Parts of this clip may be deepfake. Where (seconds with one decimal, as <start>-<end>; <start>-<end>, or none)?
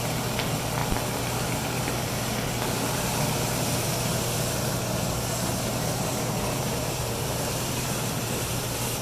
0.8-2.0; 6.1-8.6